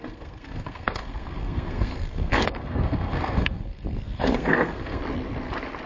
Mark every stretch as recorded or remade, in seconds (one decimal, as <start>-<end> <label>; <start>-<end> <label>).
0.0-5.0 remade; 5.0-5.9 recorded